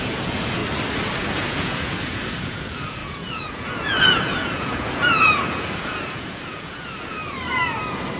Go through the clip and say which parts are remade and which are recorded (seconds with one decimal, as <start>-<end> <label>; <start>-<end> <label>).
0.0-0.6 remade; 0.6-1.2 recorded; 1.2-7.2 remade; 7.2-8.2 recorded